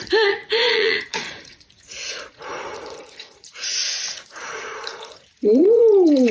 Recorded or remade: remade